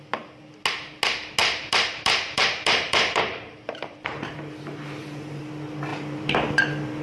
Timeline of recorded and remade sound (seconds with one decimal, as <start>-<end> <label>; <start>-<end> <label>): 0.0-1.4 recorded; 1.4-5.4 remade; 5.4-5.9 recorded; 5.9-6.5 remade; 6.5-7.0 recorded